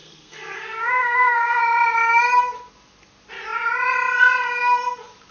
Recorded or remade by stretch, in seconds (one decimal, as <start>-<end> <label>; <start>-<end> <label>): 0.0-1.6 remade; 1.6-5.3 recorded